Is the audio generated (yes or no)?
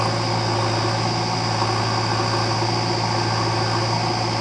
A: no